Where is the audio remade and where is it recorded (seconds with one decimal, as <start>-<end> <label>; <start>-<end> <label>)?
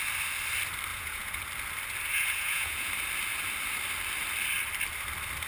0.0-0.9 recorded; 0.9-1.4 remade; 1.4-2.1 recorded; 2.1-2.9 remade; 2.9-5.5 recorded